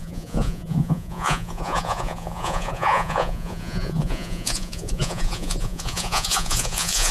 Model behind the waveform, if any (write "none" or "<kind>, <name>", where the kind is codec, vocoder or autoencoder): vocoder, Vocos